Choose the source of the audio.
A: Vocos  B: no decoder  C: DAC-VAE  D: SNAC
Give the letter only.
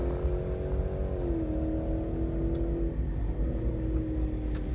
B